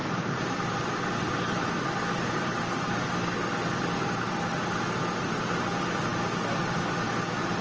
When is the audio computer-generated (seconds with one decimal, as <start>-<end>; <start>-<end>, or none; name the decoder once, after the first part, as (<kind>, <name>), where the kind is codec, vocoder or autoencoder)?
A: 0.0-2.6 (vocoder, BigVGAN v2)

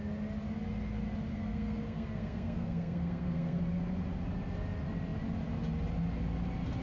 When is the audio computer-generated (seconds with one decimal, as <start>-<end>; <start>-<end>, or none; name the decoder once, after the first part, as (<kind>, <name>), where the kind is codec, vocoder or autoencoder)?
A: 1.3-3.6 (codec, SNAC)

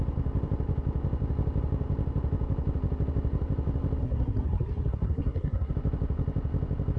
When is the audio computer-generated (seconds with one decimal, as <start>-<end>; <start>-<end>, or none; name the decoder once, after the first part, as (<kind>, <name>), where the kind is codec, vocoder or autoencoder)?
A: 4.0-5.7 (codec, SNAC)

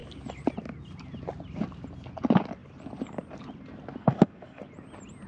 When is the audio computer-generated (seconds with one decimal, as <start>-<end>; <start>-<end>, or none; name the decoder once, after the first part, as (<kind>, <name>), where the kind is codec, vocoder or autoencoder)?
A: 4.0-4.6 (codec, SNAC)

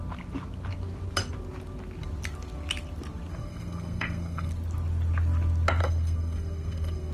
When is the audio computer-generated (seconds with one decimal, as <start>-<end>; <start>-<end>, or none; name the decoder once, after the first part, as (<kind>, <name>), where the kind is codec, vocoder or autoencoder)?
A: 3.3-4.5 (codec, SNAC); 5.8-7.1

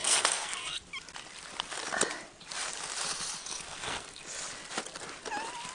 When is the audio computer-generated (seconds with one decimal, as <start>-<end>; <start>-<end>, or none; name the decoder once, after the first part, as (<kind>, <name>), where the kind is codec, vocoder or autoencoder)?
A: 0.0-0.8 (codec, SNAC); 3.4-4.2

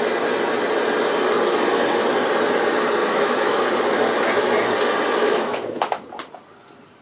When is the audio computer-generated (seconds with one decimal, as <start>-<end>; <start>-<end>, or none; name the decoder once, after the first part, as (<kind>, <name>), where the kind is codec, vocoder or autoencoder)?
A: 3.0-3.6 (autoencoder, DAC-VAE); 5.2-6.0